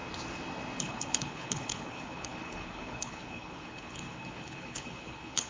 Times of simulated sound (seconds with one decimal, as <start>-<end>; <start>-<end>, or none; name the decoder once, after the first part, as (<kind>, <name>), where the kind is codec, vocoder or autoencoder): 0.8-5.5 (codec, HILCodec)